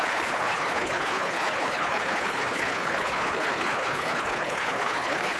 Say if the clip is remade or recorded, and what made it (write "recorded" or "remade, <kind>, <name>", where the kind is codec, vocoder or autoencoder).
remade, codec, HILCodec